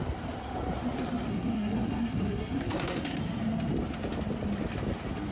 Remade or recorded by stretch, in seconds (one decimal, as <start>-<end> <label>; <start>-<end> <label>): 0.0-1.3 recorded; 1.3-3.2 remade; 3.2-5.3 recorded